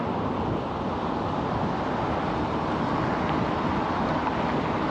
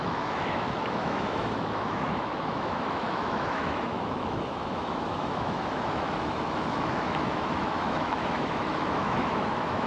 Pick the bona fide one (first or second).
first